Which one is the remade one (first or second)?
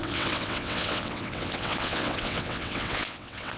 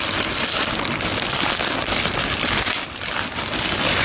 first